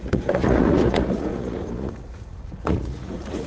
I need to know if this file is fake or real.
fake